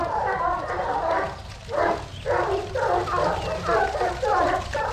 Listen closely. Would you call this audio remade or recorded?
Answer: recorded